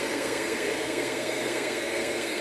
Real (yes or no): no